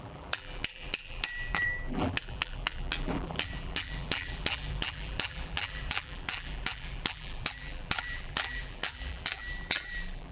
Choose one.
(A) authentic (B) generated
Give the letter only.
B